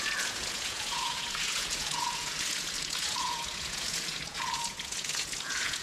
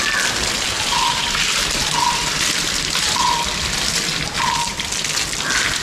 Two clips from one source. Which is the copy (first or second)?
first